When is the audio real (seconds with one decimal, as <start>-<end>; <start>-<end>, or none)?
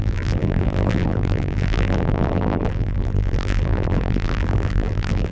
none